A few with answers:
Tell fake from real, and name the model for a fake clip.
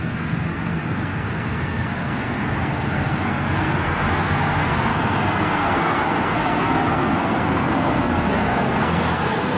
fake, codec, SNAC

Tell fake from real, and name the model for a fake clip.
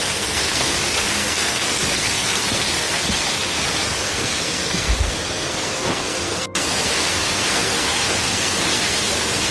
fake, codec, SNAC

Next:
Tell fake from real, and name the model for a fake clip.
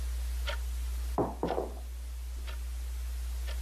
real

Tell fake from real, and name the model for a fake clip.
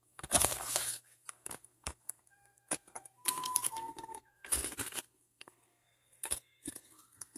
fake, codec, SNAC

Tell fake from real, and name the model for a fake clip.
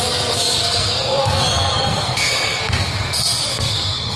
fake, codec, SNAC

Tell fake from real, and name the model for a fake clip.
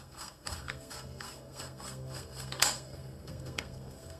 fake, codec, SNAC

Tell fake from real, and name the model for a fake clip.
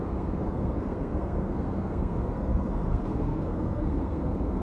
fake, codec, SNAC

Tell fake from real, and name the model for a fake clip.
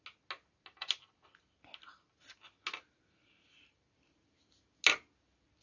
real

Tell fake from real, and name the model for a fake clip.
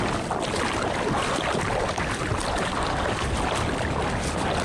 real